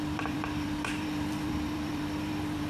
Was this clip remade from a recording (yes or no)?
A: yes